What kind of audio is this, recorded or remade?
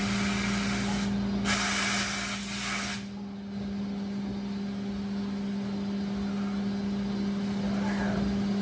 recorded